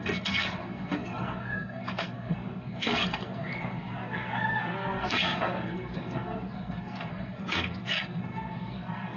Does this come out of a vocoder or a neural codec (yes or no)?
yes